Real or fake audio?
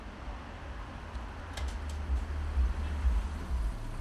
real